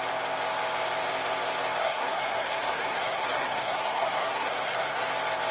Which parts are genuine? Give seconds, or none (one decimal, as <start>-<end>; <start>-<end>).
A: 0.0-1.8; 5.1-5.5